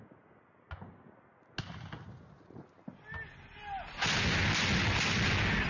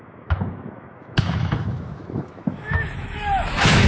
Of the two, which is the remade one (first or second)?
second